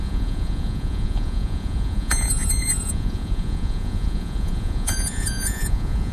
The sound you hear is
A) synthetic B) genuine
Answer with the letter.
A